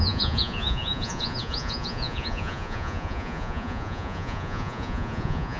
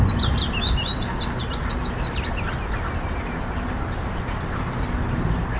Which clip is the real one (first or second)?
second